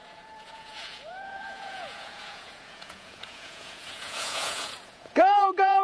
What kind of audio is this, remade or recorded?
remade